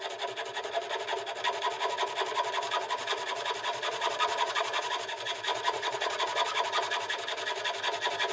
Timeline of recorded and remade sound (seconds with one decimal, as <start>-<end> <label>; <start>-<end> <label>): 0.0-3.7 recorded; 3.7-4.9 remade; 4.9-5.5 recorded; 5.5-6.2 remade; 6.2-8.3 recorded